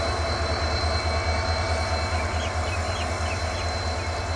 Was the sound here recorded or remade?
recorded